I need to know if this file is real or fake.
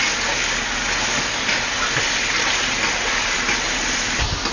real